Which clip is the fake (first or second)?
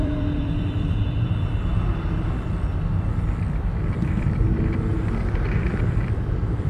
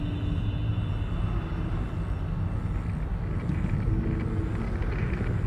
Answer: first